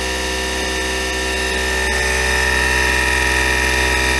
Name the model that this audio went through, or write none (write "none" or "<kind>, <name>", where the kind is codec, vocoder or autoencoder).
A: none